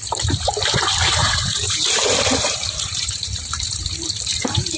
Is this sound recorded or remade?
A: remade